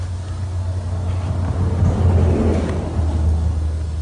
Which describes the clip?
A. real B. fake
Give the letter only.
A